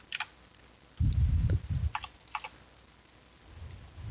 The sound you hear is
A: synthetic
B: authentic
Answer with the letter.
B